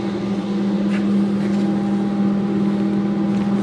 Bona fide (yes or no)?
yes